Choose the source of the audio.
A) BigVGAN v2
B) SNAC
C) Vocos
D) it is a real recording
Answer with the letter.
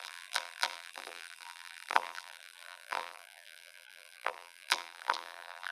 A